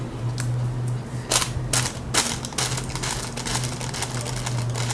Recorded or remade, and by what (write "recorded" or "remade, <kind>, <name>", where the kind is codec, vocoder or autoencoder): recorded